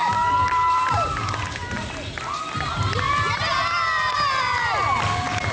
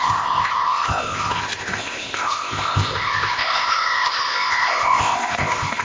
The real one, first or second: first